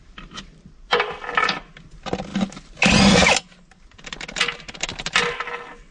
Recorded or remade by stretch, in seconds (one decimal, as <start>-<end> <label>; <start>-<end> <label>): 0.0-1.7 remade; 1.7-5.9 recorded